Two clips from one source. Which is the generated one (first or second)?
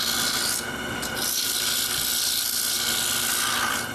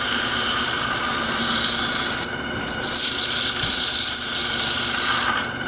second